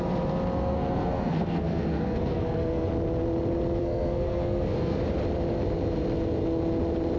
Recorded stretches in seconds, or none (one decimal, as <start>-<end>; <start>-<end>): 0.0-0.7; 2.9-3.8; 5.0-7.2